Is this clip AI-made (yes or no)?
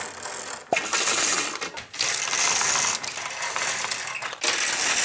no